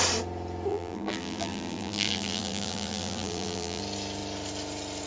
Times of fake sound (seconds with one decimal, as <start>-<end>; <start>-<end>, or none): 0.7-3.8